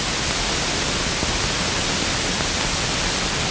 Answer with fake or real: real